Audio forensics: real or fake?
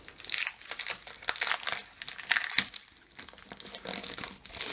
real